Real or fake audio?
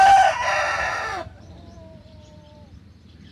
fake